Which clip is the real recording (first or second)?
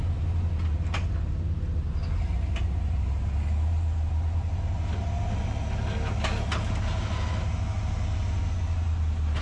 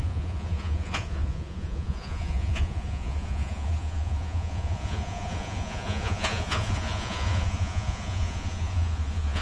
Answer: first